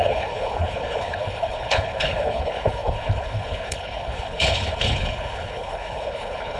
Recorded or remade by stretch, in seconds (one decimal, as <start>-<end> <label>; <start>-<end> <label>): 0.0-6.6 remade